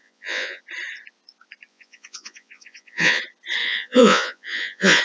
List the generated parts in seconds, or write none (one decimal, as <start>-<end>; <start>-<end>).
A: 0.0-0.6; 1.7-3.2; 3.6-5.0